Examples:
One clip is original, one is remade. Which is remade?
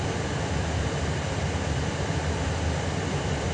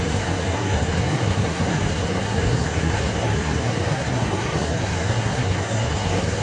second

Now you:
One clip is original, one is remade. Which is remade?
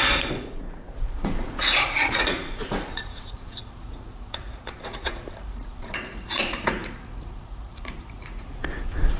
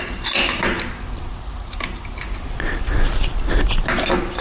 first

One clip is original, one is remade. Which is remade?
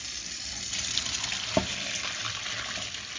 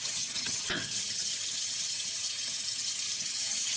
second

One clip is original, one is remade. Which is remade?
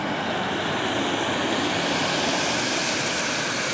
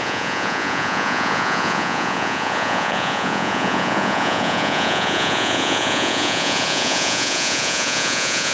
second